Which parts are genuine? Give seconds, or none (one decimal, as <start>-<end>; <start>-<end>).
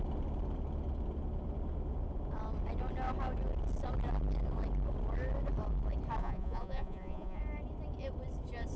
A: 0.0-6.2; 7.4-8.8